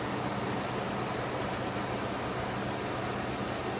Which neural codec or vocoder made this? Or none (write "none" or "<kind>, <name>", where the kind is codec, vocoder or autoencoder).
none